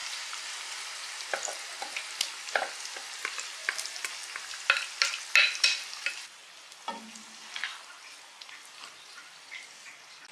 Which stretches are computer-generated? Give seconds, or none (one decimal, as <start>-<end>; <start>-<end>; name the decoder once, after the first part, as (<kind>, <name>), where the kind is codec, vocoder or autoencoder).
0.0-0.5 (vocoder, BigVGAN v2); 3.6-4.2